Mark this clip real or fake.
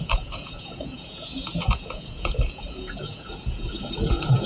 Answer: fake